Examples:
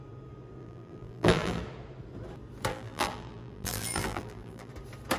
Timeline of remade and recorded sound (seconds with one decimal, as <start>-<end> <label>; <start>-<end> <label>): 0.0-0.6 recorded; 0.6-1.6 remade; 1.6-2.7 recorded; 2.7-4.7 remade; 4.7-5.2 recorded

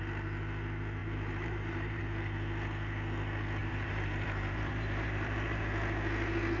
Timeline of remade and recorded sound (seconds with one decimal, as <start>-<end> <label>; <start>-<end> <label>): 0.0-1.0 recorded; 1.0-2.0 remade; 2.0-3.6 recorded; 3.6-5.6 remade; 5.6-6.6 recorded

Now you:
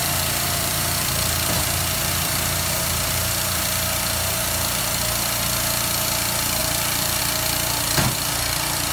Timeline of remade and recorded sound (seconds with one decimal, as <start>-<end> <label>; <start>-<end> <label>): 0.0-4.8 remade; 4.8-6.6 recorded; 6.6-7.2 remade; 7.2-8.9 recorded